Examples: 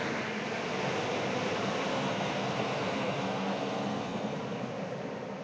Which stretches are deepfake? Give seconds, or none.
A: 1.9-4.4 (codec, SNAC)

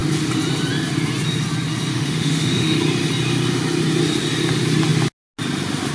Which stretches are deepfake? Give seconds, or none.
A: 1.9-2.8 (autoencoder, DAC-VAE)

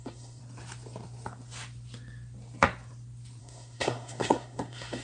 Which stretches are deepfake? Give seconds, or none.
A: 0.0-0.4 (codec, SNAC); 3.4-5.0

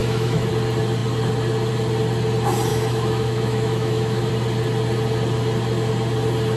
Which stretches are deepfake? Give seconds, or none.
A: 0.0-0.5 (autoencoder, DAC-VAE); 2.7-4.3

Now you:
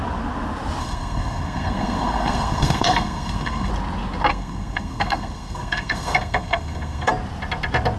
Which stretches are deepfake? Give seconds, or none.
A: 0.8-3.7 (codec, SNAC); 4.3-7.1

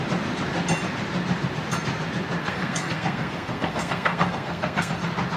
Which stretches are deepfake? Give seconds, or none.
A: 2.4-4.9 (codec, SNAC)

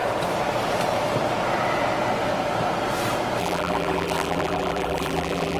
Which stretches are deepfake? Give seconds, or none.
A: 3.4-5.6 (vocoder, BigVGAN v2)